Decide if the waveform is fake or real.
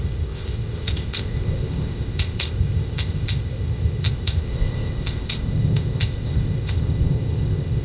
fake